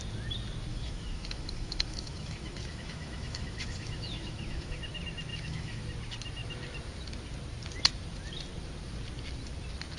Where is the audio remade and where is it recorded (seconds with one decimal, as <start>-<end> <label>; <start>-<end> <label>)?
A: 0.0-0.7 recorded; 0.7-4.8 remade; 4.8-5.3 recorded; 5.3-5.8 remade; 5.8-10.0 recorded